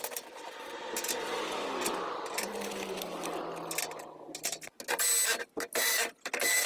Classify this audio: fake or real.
real